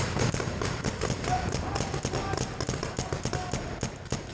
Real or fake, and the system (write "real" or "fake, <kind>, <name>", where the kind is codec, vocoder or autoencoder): real